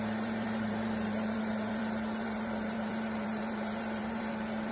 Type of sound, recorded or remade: remade